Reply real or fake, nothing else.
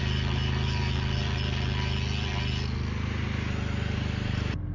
real